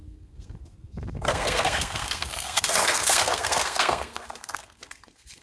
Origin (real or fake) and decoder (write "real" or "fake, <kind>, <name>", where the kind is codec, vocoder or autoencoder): fake, codec, SNAC